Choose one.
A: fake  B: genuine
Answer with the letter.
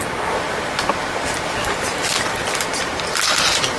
B